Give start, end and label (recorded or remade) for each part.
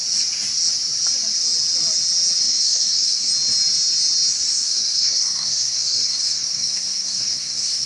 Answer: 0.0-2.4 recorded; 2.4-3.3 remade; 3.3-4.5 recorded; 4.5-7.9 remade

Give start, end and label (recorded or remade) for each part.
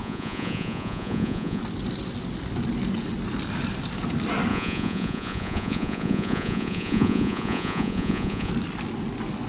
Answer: 0.0-1.6 remade; 1.6-4.5 recorded; 4.5-8.5 remade; 8.5-9.5 recorded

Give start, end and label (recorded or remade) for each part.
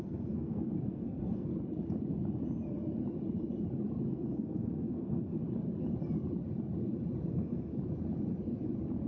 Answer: 0.0-1.5 remade; 1.5-4.1 recorded; 4.1-5.4 remade; 5.4-7.3 recorded; 7.3-7.7 remade; 7.7-9.1 recorded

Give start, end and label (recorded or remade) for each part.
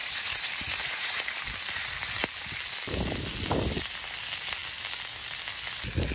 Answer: 0.0-1.4 remade; 1.4-6.1 recorded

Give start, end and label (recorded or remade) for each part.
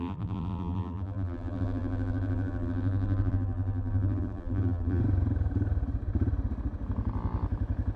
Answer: 0.0-5.0 remade; 5.0-8.0 recorded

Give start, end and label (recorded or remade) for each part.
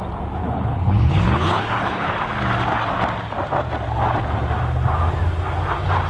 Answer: 0.0-0.4 recorded; 0.4-2.1 remade; 2.1-6.1 recorded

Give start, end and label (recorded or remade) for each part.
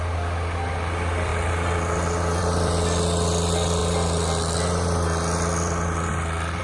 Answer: 0.0-6.6 recorded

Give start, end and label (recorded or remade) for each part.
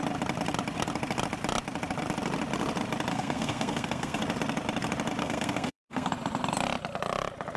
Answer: 0.0-3.1 recorded; 3.1-4.2 remade; 4.2-5.2 recorded; 5.2-6.1 remade; 6.1-7.6 recorded